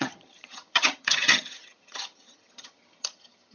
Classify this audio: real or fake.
fake